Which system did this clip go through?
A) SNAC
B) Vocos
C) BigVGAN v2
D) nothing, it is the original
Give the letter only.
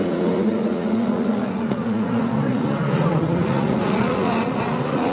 B